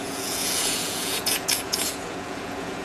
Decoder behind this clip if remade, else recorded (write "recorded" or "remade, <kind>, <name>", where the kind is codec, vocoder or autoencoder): remade, vocoder, Vocos